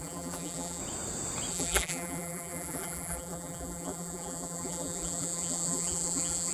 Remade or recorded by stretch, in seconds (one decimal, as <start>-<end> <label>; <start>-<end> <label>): 0.0-0.8 remade; 0.8-1.5 recorded; 1.5-6.5 remade